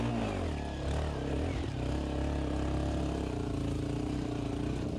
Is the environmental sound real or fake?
real